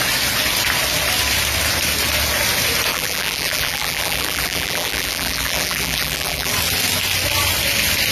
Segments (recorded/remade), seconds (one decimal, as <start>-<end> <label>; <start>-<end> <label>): 0.0-2.9 recorded; 2.9-6.5 remade; 6.5-8.1 recorded